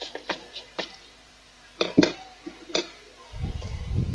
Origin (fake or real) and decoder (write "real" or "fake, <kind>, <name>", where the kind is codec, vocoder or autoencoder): fake, vocoder, BigVGAN v2